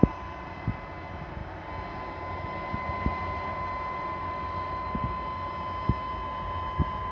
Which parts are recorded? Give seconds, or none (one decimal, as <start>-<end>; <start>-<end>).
0.0-7.1